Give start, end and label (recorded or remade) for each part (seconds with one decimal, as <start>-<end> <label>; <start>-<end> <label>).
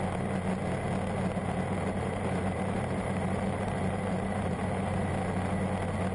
0.0-1.4 recorded; 1.4-5.1 remade; 5.1-6.1 recorded